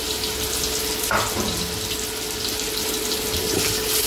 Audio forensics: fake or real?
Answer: real